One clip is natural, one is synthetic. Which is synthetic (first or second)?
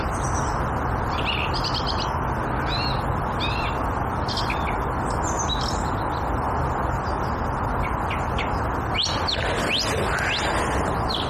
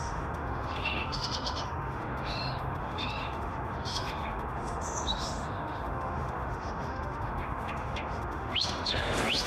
second